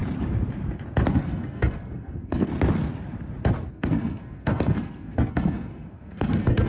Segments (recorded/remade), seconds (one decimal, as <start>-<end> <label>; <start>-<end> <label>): 0.0-1.1 recorded; 1.1-2.5 remade; 2.5-3.7 recorded; 3.7-6.7 remade